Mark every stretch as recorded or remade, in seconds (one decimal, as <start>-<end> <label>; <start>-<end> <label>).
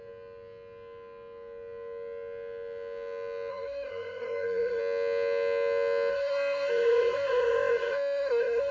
0.0-3.5 recorded; 3.5-4.8 remade; 4.8-6.1 recorded; 6.1-8.7 remade